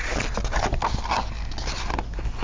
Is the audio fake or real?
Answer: real